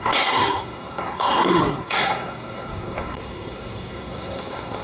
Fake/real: fake